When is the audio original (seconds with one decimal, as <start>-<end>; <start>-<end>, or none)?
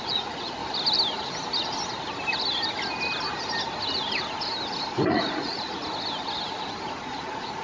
0.6-5.1; 5.8-7.0